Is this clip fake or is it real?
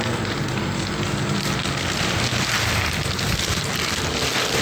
fake